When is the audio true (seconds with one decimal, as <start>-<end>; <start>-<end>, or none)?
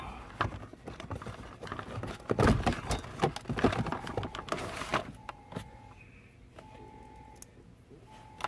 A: 0.0-8.5